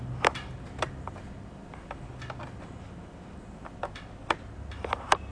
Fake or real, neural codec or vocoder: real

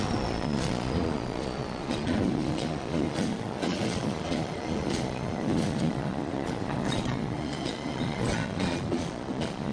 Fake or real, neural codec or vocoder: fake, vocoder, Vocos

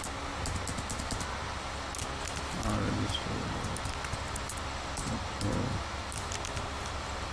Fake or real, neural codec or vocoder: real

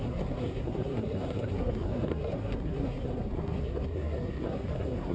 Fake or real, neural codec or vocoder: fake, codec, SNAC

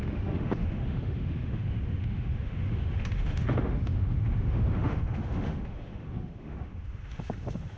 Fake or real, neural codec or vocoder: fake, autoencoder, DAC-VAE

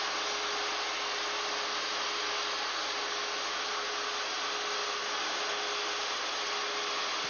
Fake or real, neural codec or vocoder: real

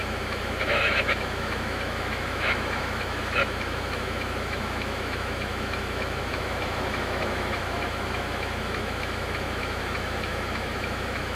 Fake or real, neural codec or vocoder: fake, autoencoder, DAC-VAE